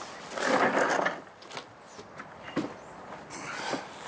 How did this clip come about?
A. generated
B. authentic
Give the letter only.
B